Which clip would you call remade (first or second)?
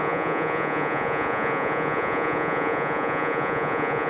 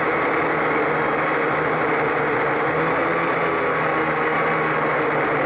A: first